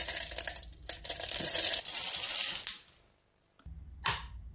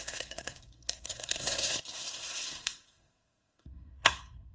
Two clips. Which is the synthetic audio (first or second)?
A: second